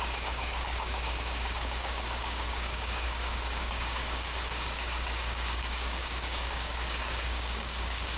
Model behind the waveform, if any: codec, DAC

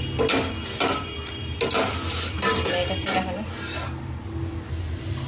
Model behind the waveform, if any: none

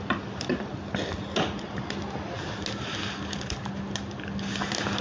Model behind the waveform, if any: none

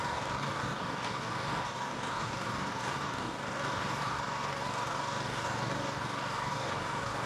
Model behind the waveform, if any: codec, DAC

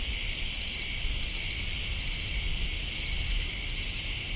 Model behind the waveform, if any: none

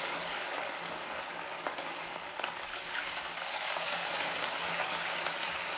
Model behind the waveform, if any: codec, DAC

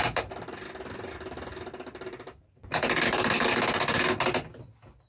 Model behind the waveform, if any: none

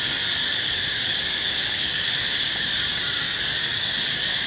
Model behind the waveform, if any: codec, DAC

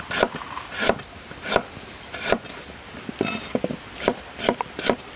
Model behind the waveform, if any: none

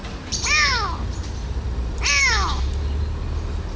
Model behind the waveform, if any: none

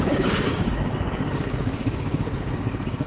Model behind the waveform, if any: codec, DAC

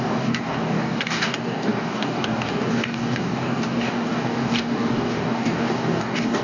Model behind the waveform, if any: codec, DAC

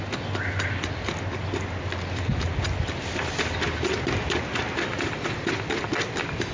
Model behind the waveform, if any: none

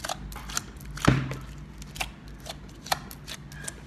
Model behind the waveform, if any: none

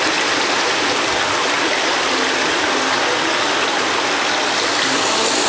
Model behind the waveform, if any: none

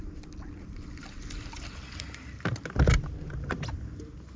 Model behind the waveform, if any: none